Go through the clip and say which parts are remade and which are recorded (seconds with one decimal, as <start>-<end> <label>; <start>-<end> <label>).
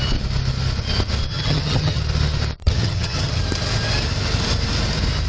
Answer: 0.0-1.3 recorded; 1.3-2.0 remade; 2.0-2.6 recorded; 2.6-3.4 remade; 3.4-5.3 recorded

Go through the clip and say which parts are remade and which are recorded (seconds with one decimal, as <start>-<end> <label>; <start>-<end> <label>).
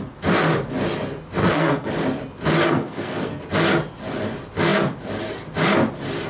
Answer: 0.0-1.4 recorded; 1.4-1.9 remade; 1.9-2.6 recorded; 2.6-3.4 remade; 3.4-6.3 recorded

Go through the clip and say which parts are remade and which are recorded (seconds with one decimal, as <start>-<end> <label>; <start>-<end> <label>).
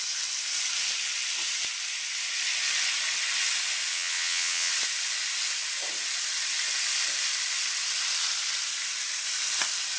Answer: 0.0-3.9 recorded; 3.9-4.7 remade; 4.7-10.0 recorded